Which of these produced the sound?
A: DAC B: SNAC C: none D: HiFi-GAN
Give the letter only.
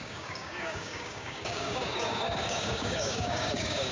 A